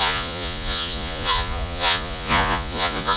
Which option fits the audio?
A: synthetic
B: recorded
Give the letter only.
A